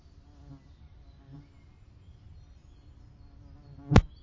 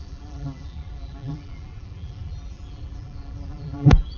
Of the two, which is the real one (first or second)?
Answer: first